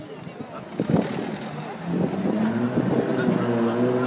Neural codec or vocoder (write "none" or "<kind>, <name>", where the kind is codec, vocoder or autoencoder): none